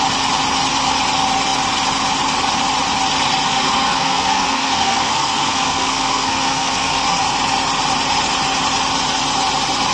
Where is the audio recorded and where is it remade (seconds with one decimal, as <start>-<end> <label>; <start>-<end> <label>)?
0.0-3.5 recorded; 3.5-7.2 remade; 7.2-9.9 recorded